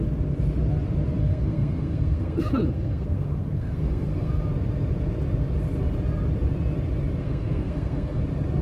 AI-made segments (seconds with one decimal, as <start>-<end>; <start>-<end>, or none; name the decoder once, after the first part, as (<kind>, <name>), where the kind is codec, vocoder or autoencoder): 1.2-4.4 (codec, SNAC); 7.2-8.2